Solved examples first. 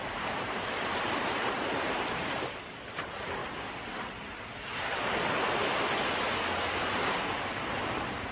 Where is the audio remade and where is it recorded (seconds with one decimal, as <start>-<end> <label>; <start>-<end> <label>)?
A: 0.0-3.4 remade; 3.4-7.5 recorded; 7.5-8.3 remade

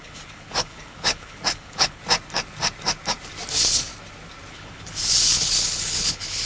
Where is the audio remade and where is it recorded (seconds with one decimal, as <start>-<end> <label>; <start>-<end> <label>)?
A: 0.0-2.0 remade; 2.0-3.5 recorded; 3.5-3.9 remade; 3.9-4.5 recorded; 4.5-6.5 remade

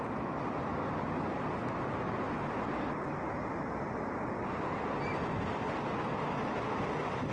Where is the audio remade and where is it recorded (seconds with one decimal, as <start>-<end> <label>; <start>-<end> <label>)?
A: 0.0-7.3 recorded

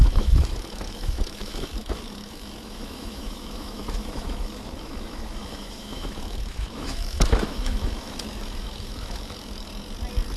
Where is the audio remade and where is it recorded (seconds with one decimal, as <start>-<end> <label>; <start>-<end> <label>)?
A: 0.0-9.7 remade; 9.7-10.4 recorded

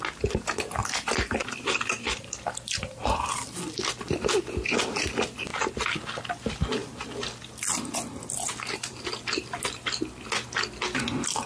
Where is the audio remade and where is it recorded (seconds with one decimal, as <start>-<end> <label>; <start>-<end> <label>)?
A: 0.0-0.8 recorded; 0.8-3.7 remade; 3.7-5.5 recorded; 5.5-6.2 remade; 6.2-6.8 recorded; 6.8-9.0 remade; 9.0-11.5 recorded

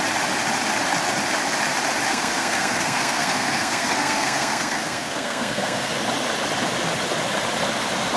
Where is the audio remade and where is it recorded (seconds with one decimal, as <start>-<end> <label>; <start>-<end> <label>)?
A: 0.0-2.1 recorded; 2.1-5.9 remade; 5.9-8.2 recorded